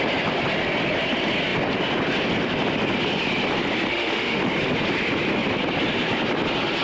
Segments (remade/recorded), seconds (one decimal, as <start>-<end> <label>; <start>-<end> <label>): 0.0-3.9 recorded; 3.9-4.4 remade; 4.4-6.8 recorded